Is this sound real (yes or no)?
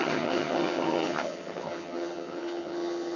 no